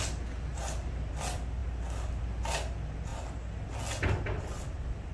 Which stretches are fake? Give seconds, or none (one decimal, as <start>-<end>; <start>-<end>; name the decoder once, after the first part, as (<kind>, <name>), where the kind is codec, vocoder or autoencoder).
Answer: 0.5-1.1 (vocoder, BigVGAN v2)